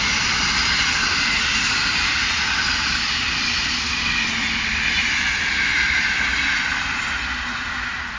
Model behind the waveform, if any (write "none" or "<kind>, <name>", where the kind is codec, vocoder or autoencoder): none